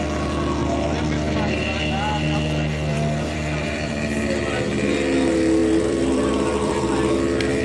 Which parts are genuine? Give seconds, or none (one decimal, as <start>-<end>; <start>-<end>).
0.0-0.6; 3.9-5.6; 6.9-7.6